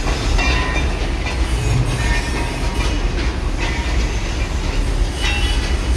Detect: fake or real real